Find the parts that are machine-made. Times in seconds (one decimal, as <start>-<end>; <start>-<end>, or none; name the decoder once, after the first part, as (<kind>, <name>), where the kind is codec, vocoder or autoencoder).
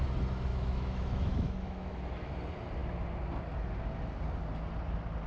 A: 0.5-2.3 (autoencoder, DAC-VAE)